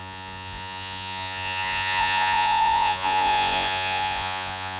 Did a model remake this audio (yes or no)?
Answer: yes